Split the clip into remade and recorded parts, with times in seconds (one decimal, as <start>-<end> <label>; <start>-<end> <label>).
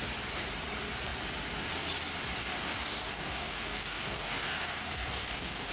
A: 0.0-2.4 recorded; 2.4-5.7 remade